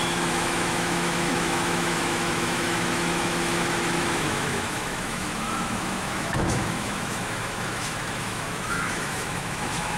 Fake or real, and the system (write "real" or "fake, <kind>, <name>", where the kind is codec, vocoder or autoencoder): fake, autoencoder, DAC-VAE